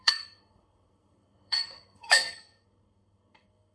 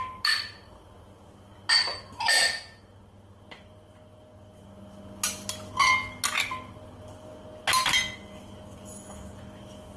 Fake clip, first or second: first